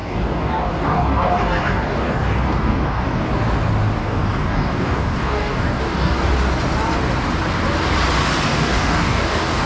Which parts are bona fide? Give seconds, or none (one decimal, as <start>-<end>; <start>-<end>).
3.3-4.0; 6.3-8.5